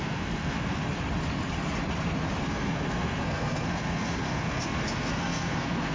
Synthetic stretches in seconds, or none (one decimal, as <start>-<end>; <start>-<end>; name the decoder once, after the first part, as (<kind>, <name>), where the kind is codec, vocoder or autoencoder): 0.0-0.8 (codec, SNAC); 2.4-5.9